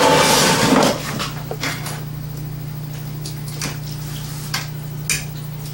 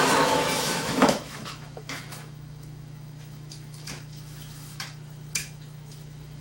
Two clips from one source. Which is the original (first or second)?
first